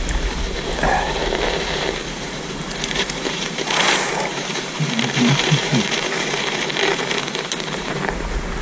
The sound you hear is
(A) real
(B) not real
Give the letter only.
B